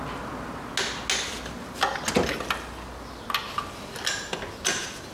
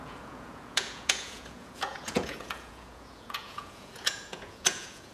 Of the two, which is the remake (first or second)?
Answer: second